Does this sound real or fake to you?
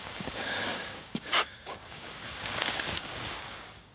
fake